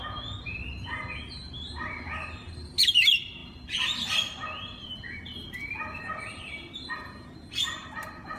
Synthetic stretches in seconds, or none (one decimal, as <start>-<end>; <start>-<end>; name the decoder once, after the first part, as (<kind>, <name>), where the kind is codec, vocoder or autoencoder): 1.2-8.4 (vocoder, BigVGAN v2)